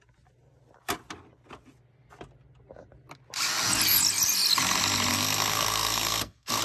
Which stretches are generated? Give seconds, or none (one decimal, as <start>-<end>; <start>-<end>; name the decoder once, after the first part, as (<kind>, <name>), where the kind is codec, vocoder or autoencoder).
5.1-6.6 (codec, SNAC)